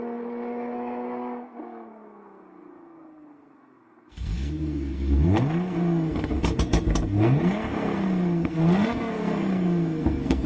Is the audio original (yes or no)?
no